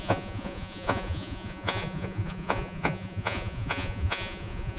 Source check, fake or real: fake